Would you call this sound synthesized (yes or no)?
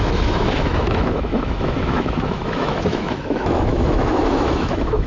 yes